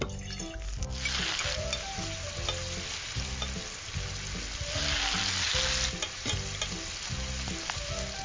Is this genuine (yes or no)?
yes